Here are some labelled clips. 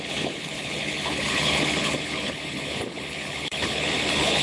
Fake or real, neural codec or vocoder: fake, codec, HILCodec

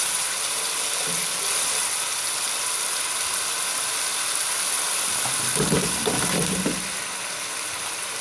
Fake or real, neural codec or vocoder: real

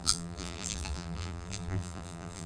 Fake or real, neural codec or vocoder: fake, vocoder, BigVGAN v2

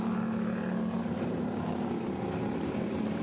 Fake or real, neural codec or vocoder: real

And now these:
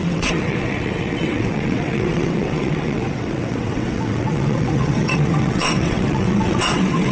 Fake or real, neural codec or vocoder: fake, vocoder, WaveNeXt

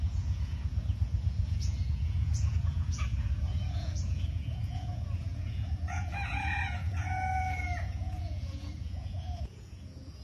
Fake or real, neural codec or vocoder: fake, vocoder, Vocos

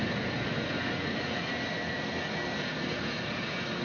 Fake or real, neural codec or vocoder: real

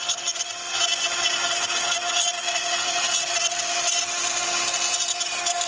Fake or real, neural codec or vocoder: real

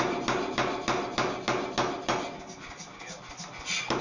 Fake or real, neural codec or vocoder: real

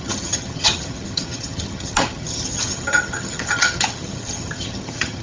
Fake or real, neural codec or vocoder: fake, vocoder, HiFi-GAN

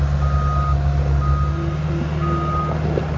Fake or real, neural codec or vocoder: real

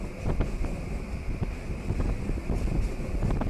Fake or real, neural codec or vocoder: real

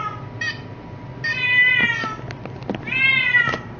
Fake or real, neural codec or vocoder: real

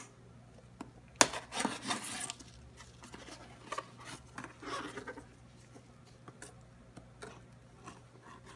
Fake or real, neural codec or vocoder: real